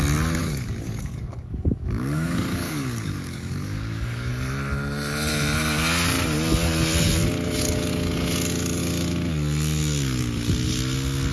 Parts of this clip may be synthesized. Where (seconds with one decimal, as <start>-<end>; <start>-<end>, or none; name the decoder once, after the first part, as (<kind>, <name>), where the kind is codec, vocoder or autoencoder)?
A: 0.4-4.3 (codec, DAC)